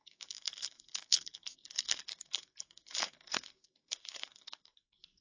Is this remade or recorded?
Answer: remade